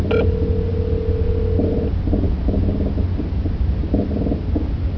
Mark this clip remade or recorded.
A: recorded